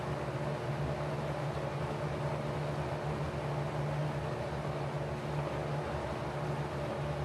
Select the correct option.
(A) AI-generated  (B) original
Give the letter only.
B